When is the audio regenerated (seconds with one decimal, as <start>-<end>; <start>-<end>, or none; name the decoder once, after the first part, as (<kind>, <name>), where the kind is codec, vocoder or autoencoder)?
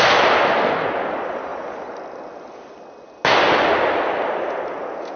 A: none